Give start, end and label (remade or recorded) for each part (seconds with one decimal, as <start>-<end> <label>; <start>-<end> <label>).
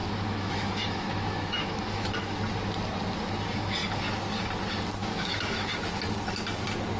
0.0-2.4 remade; 2.4-5.0 recorded; 5.0-5.7 remade; 5.7-7.0 recorded